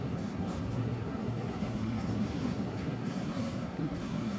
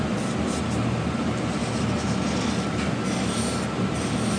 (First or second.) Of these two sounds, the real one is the second